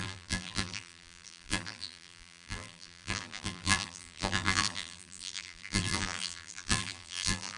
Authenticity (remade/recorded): remade